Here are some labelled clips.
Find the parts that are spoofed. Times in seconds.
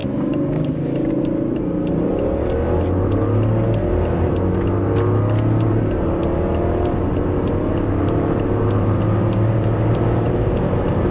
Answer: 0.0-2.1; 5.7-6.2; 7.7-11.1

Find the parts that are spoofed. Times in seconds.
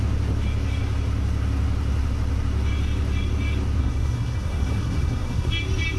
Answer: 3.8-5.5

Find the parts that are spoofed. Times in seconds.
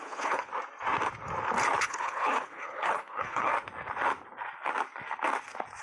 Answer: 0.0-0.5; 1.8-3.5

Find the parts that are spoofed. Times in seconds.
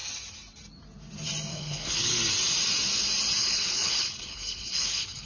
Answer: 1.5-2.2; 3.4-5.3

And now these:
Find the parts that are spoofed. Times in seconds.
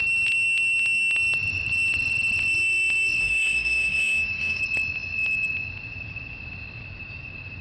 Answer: 3.2-4.6